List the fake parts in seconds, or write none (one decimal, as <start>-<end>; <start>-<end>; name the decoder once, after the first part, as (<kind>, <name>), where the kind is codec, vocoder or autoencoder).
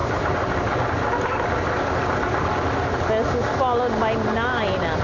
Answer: none